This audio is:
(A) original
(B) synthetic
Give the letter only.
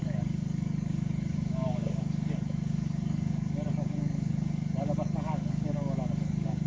B